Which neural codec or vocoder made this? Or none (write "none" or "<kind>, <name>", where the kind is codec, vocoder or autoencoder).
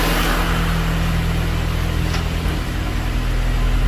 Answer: none